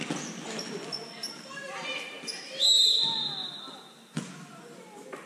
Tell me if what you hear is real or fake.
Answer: real